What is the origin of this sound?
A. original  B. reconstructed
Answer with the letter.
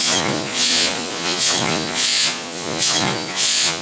B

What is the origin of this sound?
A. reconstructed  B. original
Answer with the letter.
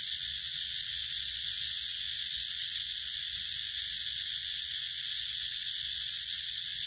A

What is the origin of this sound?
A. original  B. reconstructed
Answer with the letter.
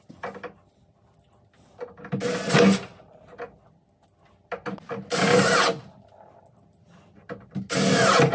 A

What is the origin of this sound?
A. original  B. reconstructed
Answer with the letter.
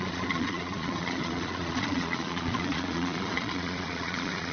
B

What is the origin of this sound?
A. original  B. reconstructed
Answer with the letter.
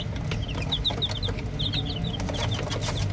A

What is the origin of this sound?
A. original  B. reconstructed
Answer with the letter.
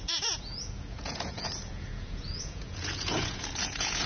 B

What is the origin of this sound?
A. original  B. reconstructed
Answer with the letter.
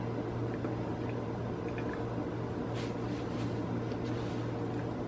A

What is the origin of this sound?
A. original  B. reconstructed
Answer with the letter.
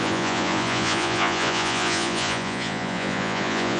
B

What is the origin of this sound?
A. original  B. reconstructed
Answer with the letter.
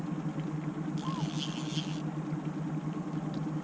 A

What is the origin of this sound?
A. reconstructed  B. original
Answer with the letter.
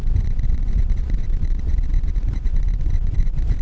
A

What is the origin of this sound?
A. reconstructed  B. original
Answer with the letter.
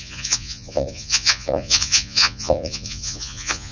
A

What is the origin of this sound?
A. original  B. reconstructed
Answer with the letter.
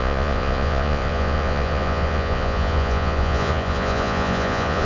B